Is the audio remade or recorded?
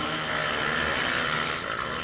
recorded